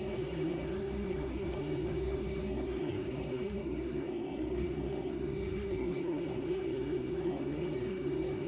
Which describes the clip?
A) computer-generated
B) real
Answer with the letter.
A